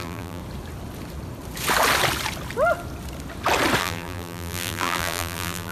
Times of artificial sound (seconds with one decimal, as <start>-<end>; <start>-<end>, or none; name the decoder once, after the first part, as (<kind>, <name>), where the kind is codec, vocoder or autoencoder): 0.0-0.4 (vocoder, BigVGAN v2); 3.8-5.7